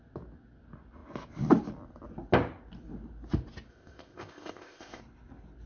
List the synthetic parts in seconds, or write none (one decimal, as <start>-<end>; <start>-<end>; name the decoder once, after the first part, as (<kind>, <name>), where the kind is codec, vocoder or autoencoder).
3.7-5.0 (codec, ZipCodec)